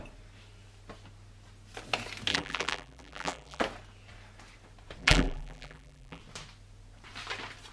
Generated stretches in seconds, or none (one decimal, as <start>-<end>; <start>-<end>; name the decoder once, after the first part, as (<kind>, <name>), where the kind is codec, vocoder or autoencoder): 2.3-3.6 (vocoder, BigVGAN v2); 5.0-6.2